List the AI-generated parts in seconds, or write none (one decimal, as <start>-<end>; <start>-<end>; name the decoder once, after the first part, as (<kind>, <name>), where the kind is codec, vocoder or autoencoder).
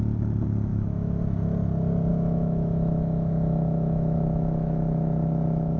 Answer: 0.7-1.2 (autoencoder, DAC-VAE); 2.1-5.8